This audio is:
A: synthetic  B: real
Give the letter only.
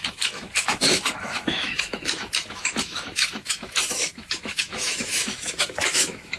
A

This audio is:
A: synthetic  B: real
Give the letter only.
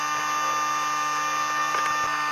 B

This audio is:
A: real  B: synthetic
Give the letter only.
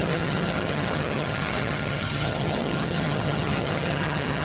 B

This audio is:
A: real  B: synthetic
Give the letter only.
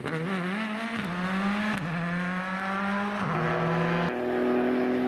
A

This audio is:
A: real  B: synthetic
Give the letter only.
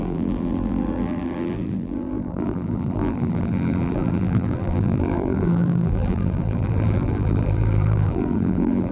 B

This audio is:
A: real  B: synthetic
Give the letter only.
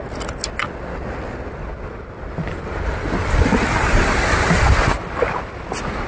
A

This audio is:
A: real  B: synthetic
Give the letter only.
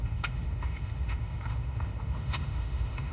B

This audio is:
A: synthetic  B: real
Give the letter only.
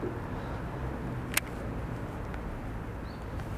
B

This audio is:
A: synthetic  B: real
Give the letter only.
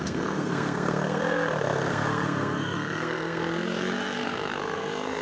A